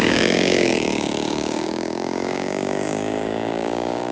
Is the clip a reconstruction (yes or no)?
yes